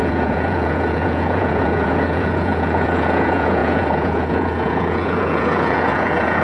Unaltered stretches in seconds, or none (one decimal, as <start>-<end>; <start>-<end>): none

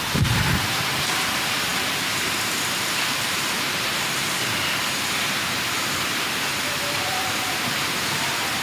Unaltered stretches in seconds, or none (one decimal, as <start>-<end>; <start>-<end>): none

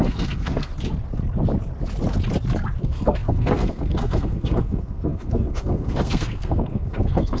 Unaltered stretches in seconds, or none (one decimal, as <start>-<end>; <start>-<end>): 0.7-2.8

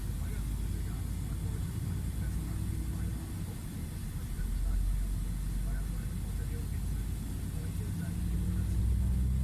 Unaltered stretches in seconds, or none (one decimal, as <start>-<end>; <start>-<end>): 0.0-9.4

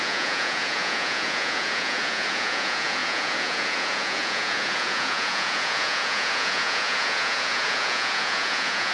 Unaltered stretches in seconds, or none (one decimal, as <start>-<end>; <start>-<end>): none